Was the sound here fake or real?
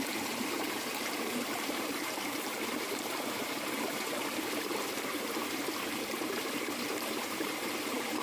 fake